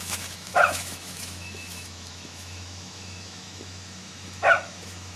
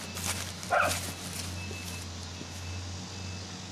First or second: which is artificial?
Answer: first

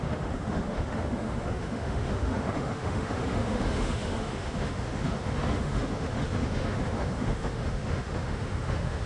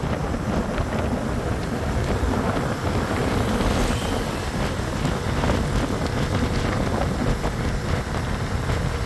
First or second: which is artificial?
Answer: first